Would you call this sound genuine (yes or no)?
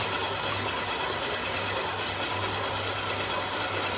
yes